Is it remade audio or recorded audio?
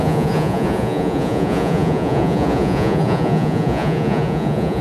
remade